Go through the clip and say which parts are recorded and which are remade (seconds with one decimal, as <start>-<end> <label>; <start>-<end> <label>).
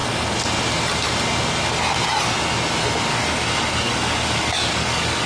0.0-3.1 recorded; 3.1-5.3 remade